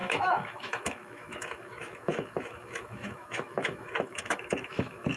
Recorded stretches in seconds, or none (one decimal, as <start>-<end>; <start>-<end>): none